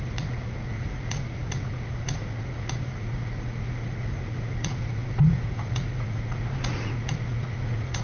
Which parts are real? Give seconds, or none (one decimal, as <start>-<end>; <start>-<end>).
none